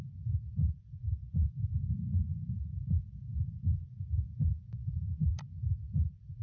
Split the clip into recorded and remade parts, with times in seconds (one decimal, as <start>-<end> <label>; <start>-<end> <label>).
0.0-0.6 remade; 0.6-4.4 recorded; 4.4-6.4 remade

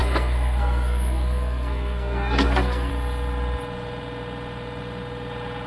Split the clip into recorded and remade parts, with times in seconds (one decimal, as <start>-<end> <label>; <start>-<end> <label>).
0.0-2.9 remade; 2.9-5.7 recorded

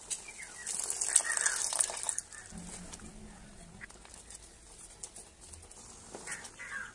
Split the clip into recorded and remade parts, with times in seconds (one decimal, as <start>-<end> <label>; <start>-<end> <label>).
0.0-6.9 recorded

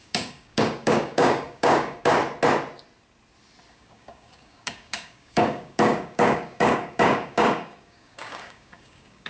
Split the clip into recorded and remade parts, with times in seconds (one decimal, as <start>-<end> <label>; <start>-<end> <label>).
0.0-2.2 remade; 2.2-3.7 recorded; 3.7-9.3 remade

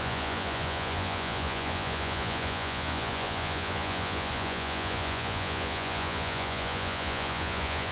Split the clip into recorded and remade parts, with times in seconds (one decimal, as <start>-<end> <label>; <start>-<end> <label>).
0.0-7.9 remade

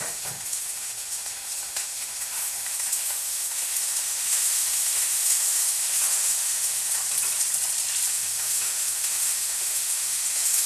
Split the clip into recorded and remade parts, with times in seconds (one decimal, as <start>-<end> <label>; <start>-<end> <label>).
0.0-7.0 remade; 7.0-8.1 recorded; 8.1-10.7 remade

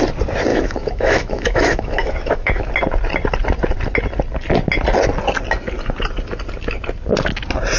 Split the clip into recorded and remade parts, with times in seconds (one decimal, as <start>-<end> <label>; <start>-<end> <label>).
0.0-0.5 recorded; 0.5-2.7 remade; 2.7-7.8 recorded